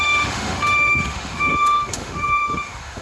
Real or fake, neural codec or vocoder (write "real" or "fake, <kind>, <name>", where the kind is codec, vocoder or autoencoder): fake, autoencoder, DAC-VAE